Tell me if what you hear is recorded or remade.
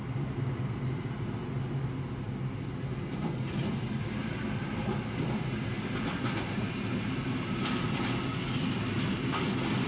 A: recorded